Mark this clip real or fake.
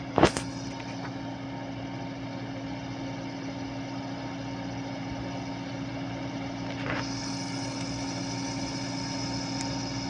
real